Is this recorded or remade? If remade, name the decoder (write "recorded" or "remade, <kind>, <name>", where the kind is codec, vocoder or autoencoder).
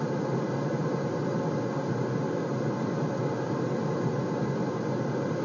recorded